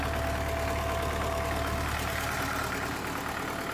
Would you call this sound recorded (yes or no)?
yes